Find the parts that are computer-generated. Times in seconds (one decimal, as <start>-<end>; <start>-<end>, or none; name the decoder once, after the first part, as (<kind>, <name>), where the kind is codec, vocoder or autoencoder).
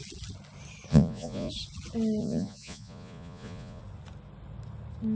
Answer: 0.9-1.5 (vocoder, Vocos); 2.2-3.8